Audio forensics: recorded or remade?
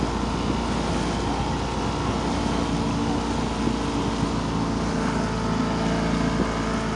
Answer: recorded